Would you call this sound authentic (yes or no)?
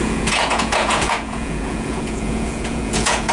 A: no